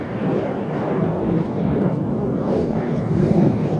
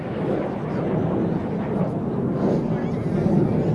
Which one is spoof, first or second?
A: first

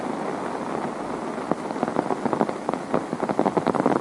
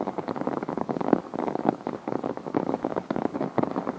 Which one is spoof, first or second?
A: second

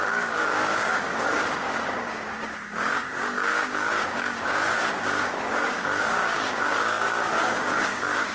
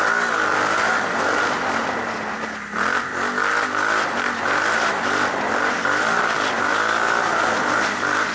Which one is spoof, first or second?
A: first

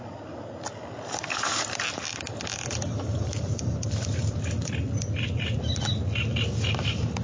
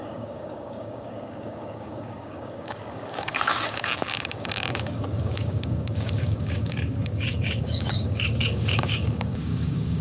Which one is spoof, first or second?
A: second